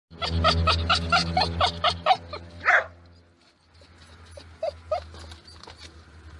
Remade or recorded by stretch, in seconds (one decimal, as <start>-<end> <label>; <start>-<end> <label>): 0.0-6.4 recorded